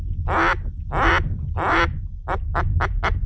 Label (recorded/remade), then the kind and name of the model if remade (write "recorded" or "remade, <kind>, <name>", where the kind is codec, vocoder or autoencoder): recorded